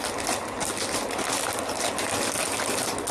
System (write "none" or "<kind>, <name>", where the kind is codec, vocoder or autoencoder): none